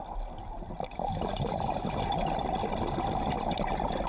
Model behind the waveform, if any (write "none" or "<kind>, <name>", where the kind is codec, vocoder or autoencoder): none